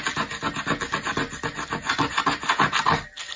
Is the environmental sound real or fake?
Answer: real